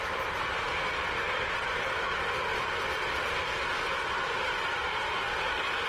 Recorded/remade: recorded